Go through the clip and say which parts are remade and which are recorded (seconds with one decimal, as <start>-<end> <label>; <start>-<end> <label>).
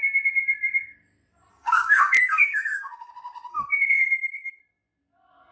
0.0-1.5 recorded; 1.5-3.1 remade; 3.1-3.5 recorded; 3.5-4.6 remade; 4.6-5.5 recorded